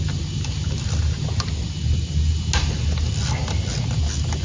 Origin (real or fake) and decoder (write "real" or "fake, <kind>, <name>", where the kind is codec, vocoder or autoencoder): real